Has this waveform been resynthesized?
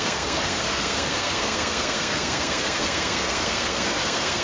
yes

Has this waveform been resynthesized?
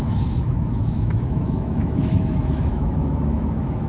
yes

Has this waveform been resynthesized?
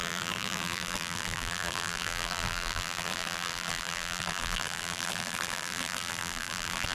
yes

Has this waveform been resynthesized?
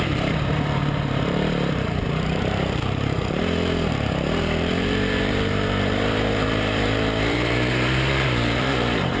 yes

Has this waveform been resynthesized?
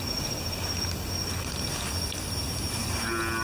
no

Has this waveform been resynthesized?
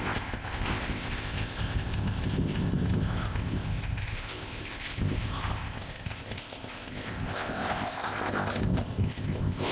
yes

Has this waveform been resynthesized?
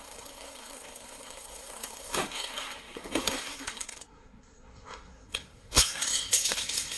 yes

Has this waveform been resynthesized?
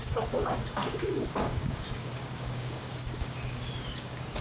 yes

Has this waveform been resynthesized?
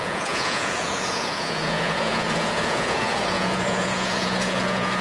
yes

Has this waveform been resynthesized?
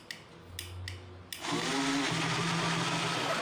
no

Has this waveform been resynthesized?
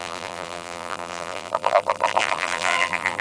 yes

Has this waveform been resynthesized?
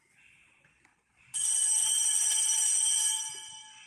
no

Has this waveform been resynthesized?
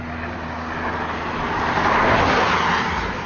no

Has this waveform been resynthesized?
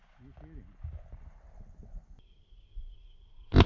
no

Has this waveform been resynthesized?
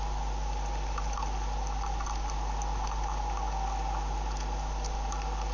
no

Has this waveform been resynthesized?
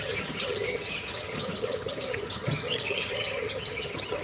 yes